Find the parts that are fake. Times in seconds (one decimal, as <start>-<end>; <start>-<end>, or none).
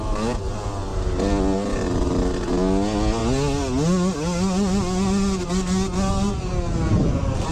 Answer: none